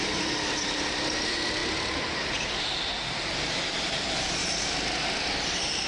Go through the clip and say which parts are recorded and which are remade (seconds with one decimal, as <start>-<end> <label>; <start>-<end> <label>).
0.0-5.9 recorded